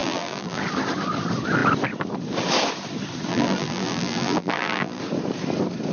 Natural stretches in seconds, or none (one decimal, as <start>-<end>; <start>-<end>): 0.6-3.3; 5.0-5.9